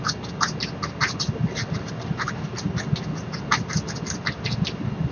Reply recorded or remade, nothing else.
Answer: recorded